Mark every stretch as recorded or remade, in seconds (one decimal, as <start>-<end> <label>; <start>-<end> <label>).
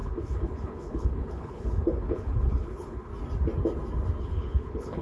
0.0-3.1 remade; 3.1-4.2 recorded; 4.2-5.0 remade